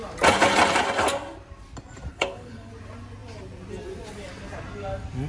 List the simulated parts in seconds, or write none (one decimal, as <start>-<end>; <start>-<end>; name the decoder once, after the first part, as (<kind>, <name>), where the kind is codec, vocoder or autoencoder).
2.1-2.7 (codec, HILCodec)